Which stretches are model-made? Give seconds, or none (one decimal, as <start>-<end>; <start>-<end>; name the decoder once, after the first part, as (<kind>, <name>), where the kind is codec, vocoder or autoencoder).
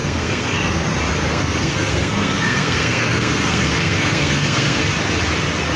0.0-0.8 (codec, SNAC); 1.3-4.8